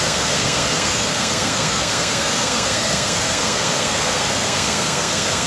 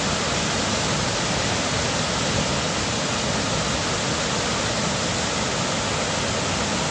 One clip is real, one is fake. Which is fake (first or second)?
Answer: first